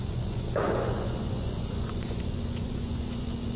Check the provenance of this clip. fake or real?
fake